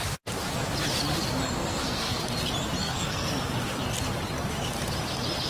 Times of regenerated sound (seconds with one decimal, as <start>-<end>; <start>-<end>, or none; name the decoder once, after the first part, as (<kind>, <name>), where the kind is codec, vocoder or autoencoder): 1.6-2.2 (codec, SNAC); 2.8-3.4